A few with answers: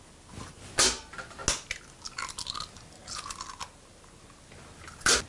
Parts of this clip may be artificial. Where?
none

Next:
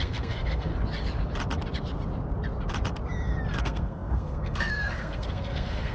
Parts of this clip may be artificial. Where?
0.0-0.7 (codec, SNAC); 3.6-5.9

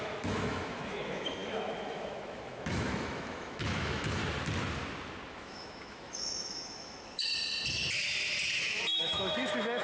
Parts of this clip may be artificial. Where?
0.0-4.2 (autoencoder, DAC-VAE); 5.3-7.3; 8.6-9.8